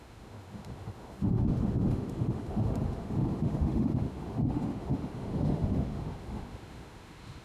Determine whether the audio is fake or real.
fake